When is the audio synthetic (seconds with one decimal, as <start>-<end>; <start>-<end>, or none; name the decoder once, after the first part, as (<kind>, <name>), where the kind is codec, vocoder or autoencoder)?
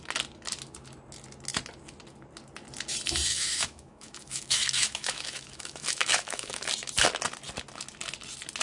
3.3-6.7 (autoencoder, DAC-VAE)